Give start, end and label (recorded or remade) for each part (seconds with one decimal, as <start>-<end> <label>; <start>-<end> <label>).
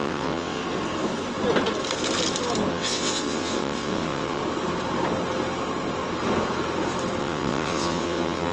0.0-0.6 remade; 0.6-2.7 recorded; 2.7-4.4 remade; 4.4-7.2 recorded; 7.2-8.5 remade